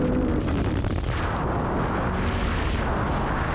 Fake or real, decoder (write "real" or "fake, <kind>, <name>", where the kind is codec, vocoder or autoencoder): real